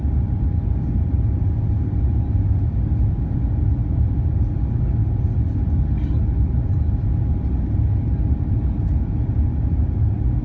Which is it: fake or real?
real